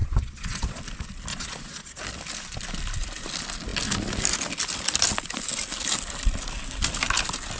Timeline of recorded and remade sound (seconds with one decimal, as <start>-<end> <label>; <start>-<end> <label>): 0.0-0.8 remade; 0.8-1.3 recorded; 1.3-2.0 remade; 2.0-7.6 recorded